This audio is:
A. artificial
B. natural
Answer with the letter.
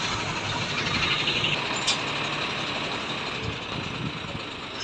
B